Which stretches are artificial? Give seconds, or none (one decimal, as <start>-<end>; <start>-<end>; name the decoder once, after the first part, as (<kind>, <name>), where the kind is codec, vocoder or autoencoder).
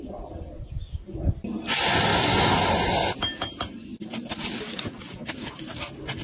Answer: none